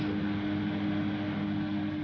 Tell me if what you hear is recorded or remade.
recorded